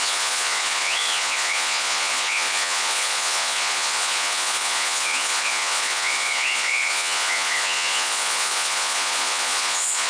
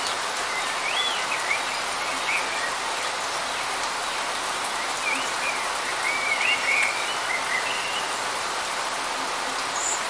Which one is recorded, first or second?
second